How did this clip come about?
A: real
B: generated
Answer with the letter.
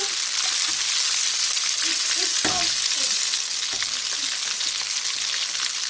A